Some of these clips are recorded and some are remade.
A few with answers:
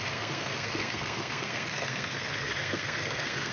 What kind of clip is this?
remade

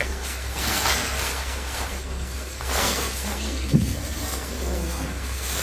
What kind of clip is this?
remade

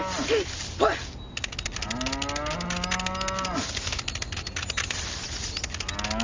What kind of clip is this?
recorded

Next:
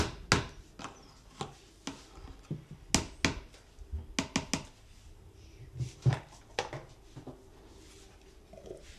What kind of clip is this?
recorded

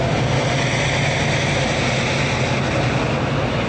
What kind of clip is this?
recorded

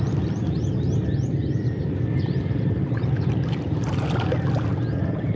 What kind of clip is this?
recorded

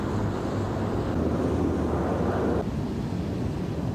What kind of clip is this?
recorded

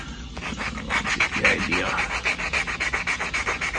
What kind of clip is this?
recorded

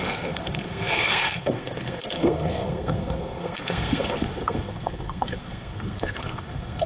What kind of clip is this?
remade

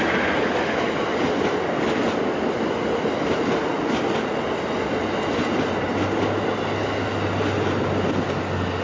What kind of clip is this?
recorded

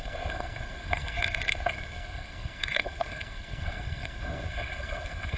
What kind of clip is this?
remade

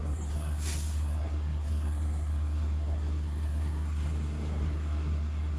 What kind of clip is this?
remade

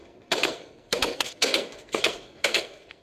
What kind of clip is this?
remade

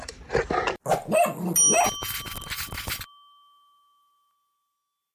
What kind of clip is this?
recorded